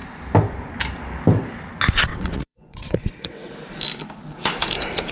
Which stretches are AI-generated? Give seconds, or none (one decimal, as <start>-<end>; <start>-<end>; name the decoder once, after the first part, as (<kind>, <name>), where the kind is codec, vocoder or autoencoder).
2.1-3.5 (vocoder, WaveNeXt)

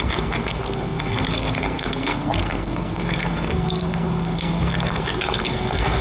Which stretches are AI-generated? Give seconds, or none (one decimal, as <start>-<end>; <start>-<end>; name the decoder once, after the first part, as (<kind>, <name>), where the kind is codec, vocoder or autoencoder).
0.0-6.0 (codec, SNAC)

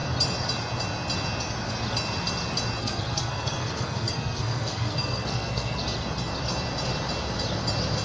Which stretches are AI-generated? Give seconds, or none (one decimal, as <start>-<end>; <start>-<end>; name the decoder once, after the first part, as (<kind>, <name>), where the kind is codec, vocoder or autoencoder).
2.8-5.8 (codec, SNAC)

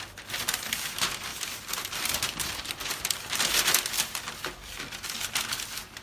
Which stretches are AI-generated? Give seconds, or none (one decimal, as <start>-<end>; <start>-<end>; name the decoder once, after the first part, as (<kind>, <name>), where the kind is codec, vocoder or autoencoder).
none